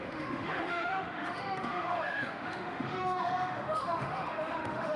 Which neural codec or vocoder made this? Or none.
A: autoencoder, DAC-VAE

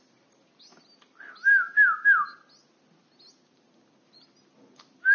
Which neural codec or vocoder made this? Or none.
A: none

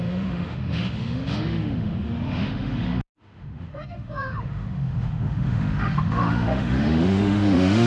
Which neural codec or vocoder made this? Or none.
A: autoencoder, DAC-VAE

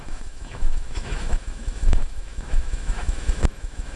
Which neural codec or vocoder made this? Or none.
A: autoencoder, DAC-VAE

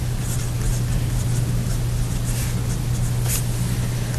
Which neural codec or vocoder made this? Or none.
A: none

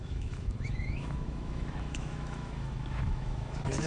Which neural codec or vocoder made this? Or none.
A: autoencoder, DAC-VAE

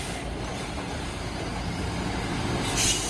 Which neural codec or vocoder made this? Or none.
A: none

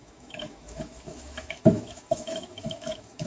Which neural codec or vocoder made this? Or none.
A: autoencoder, DAC-VAE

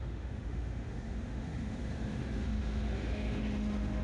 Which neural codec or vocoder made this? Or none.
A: autoencoder, DAC-VAE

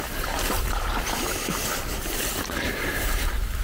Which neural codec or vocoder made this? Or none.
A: none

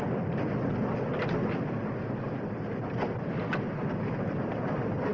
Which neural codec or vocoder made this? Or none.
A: none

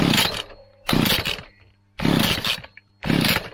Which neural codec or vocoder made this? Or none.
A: none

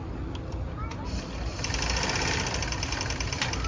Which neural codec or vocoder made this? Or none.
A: none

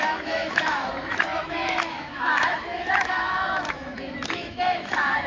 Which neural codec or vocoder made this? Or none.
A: autoencoder, DAC-VAE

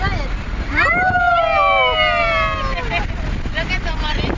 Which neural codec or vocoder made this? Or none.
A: none